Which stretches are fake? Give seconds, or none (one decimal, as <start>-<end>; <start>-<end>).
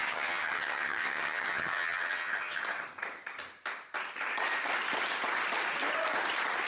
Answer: 0.0-2.6